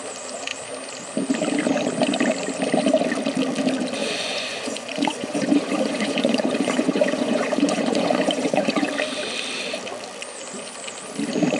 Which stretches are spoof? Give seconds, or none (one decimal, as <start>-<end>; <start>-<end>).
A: 4.0-8.9